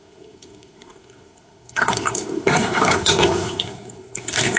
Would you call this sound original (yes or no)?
no